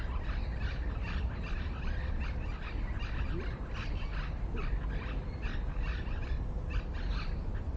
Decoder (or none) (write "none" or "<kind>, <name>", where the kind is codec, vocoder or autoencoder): none